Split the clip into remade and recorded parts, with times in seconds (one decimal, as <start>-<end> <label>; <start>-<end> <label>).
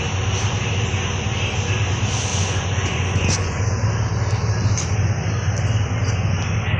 0.0-2.3 recorded; 2.3-3.6 remade; 3.6-6.8 recorded